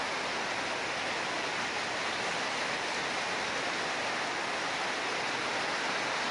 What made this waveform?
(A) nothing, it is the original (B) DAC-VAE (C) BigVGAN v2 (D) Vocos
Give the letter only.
A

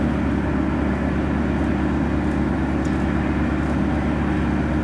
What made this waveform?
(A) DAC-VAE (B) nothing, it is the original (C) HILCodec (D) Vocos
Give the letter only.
B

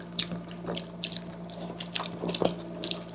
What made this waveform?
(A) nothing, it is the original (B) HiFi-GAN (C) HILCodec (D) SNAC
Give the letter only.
A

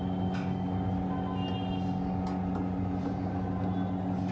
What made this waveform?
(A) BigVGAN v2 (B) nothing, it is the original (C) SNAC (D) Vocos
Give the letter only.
B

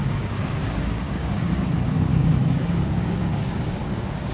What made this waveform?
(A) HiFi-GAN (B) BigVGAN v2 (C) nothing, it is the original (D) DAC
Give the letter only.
D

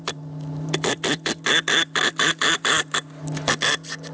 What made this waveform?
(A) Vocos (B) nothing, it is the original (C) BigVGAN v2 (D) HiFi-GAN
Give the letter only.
B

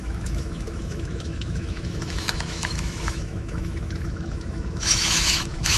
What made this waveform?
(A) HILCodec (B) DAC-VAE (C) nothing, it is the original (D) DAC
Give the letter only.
B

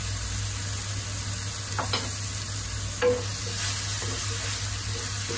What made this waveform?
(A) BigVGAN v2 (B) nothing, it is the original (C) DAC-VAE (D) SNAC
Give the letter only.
B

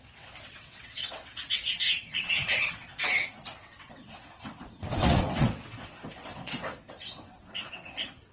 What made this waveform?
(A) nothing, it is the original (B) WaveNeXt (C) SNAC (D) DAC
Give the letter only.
B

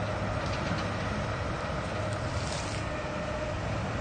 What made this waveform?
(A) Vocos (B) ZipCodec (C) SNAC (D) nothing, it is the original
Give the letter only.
D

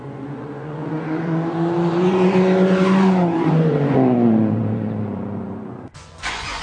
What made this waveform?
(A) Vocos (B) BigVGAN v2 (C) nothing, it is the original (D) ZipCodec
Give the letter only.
A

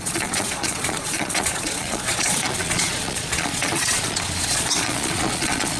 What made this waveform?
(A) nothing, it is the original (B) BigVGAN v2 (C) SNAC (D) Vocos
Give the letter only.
D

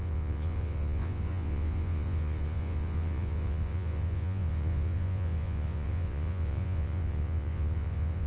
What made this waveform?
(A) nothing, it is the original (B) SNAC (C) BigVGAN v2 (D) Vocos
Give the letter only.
D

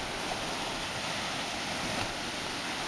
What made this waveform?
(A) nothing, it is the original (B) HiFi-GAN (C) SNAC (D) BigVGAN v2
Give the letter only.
A